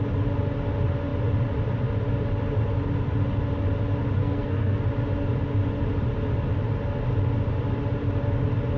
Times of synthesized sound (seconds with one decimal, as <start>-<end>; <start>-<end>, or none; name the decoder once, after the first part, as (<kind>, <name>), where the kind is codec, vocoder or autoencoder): 4.2-4.8 (codec, SNAC)